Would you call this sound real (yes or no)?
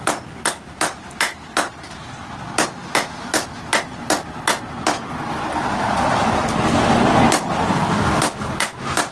yes